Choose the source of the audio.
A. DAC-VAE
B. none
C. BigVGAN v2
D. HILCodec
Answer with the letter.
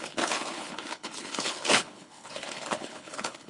D